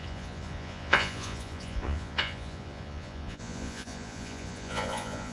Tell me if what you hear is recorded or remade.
remade